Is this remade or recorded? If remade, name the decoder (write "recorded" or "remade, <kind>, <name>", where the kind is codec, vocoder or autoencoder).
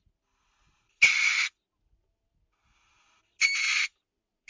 recorded